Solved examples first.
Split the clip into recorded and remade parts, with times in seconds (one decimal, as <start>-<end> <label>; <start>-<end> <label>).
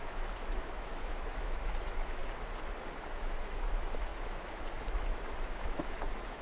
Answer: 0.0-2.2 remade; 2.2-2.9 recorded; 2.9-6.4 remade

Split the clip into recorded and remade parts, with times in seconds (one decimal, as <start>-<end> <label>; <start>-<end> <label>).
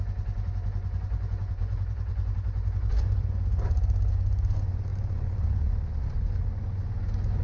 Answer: 0.0-7.4 remade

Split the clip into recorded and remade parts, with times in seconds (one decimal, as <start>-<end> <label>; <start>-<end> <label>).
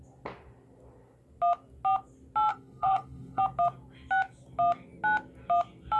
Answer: 0.0-2.5 recorded; 2.5-3.4 remade; 3.4-6.0 recorded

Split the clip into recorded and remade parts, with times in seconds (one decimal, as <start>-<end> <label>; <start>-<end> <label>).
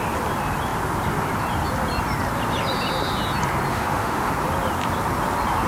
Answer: 0.0-3.7 recorded; 3.7-4.3 remade; 4.3-5.7 recorded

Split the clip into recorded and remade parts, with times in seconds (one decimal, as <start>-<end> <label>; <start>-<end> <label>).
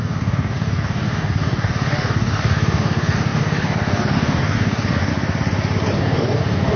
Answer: 0.0-5.1 remade; 5.1-6.0 recorded; 6.0-6.8 remade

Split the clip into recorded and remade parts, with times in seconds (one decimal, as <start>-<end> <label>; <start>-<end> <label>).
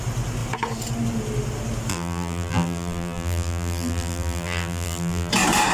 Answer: 0.0-1.9 recorded; 1.9-5.3 remade; 5.3-5.7 recorded